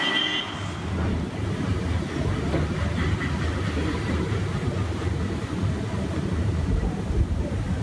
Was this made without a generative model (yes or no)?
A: yes